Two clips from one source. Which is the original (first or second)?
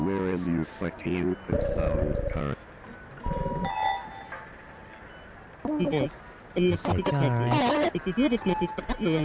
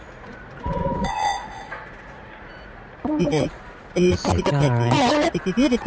first